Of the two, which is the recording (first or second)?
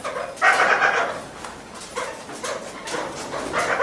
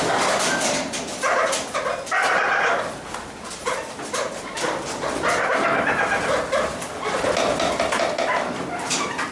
first